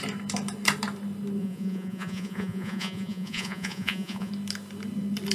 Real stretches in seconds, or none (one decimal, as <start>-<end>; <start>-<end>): 0.0-1.4; 4.3-5.3